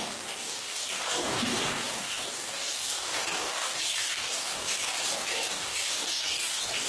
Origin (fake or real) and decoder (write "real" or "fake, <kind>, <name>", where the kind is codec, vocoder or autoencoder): fake, codec, DAC